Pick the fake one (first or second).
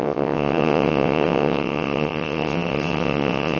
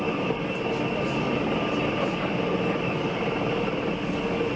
first